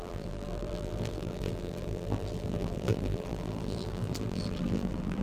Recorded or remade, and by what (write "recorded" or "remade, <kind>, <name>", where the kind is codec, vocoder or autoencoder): remade, vocoder, BigVGAN v2